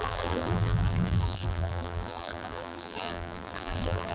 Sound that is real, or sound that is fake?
fake